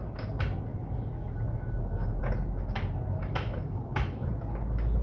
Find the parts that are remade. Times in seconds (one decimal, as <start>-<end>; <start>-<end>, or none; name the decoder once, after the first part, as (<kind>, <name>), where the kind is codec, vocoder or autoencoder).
0.7-2.2 (autoencoder, DAC-VAE); 3.2-4.3